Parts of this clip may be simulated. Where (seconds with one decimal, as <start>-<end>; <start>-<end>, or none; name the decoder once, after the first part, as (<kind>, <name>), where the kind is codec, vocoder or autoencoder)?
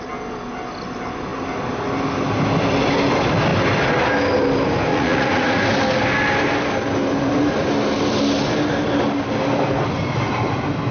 4.9-5.6 (vocoder, Vocos)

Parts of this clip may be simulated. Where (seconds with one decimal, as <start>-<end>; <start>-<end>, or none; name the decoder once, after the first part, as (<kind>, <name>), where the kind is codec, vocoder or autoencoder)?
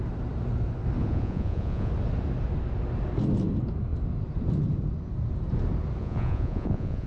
1.0-1.9 (vocoder, Vocos); 6.0-7.1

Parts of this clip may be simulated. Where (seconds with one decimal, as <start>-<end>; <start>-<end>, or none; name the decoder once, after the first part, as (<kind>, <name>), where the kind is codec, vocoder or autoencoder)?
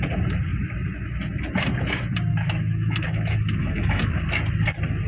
2.3-4.1 (autoencoder, DAC-VAE)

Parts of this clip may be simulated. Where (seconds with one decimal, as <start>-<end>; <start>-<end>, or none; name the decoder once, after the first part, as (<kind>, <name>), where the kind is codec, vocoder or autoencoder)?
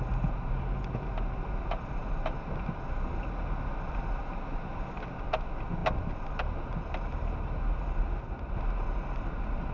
none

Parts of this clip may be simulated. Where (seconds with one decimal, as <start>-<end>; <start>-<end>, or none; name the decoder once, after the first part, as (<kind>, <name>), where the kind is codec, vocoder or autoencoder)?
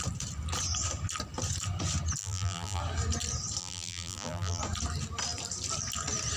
2.2-2.8 (vocoder, BigVGAN v2); 3.6-4.6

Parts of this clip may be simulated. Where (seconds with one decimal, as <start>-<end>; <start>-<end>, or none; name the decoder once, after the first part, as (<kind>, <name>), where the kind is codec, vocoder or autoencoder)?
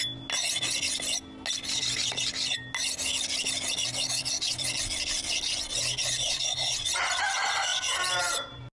none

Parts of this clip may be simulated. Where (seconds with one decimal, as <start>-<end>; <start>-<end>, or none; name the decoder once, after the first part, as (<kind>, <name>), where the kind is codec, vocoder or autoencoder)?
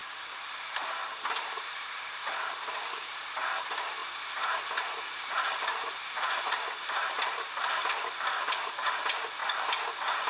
0.0-3.6 (vocoder, BigVGAN v2); 4.0-8.7